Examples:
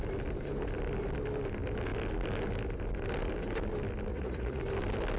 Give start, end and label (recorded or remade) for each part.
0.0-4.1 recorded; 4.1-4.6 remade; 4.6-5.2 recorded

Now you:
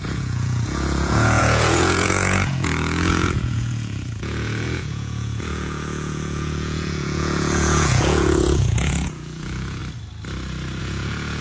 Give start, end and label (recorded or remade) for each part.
0.0-9.8 remade; 9.8-10.8 recorded; 10.8-11.4 remade

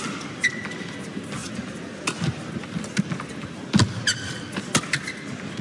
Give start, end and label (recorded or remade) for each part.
0.0-5.6 recorded

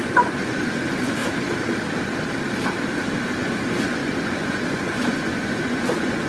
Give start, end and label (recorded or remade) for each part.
0.0-1.2 remade; 1.2-3.2 recorded; 3.2-6.3 remade

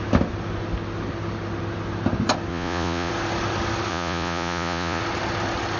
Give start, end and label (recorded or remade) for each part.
0.0-2.5 recorded; 2.5-3.1 remade; 3.1-3.9 recorded; 3.9-5.0 remade; 5.0-5.8 recorded

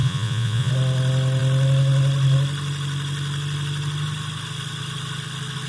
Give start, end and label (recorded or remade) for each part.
0.0-0.7 remade; 0.7-5.7 recorded